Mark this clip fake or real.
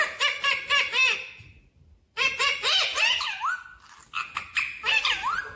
real